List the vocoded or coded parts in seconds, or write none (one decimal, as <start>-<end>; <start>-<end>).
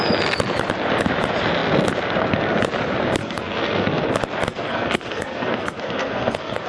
3.2-4.1; 4.5-6.7